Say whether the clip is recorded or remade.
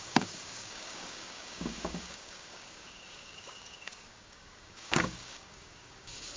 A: remade